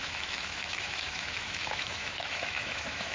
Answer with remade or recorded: remade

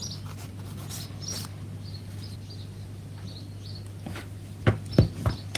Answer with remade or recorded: recorded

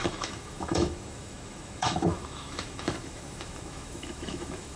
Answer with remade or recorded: remade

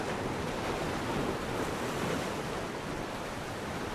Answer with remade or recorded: recorded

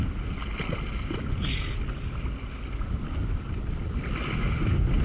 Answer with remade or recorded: recorded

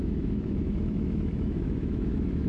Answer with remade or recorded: remade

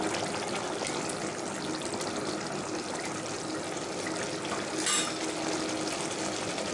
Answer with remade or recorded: recorded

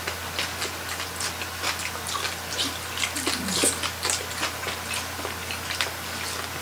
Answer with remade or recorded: recorded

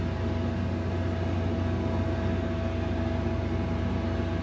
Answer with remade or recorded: recorded